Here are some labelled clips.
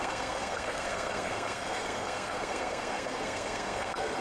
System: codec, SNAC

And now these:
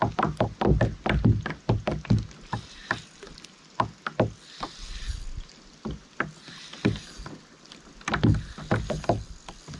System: none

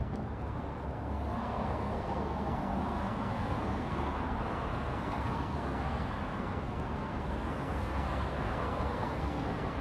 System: codec, SNAC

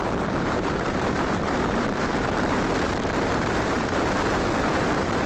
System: vocoder, BigVGAN v2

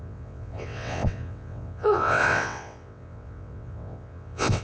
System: vocoder, WaveNeXt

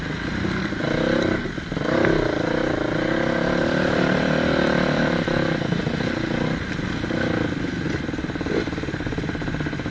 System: none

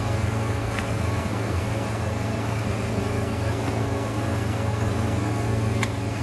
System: codec, SNAC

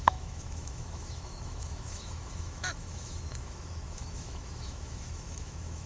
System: autoencoder, DAC-VAE